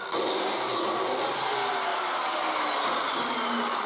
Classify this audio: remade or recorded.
recorded